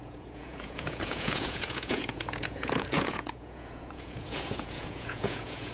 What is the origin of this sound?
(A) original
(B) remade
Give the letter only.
B